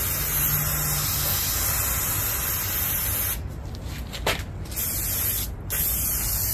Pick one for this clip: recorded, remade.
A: recorded